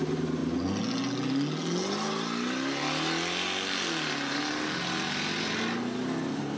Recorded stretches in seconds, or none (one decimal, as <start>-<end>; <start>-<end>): 0.0-6.6